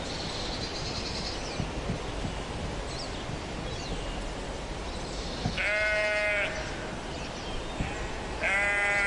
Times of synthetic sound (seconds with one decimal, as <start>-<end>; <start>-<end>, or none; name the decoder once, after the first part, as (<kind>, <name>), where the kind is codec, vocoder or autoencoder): none